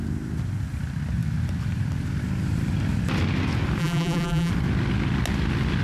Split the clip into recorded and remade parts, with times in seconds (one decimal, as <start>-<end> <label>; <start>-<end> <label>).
0.0-3.8 recorded; 3.8-4.5 remade; 4.5-5.8 recorded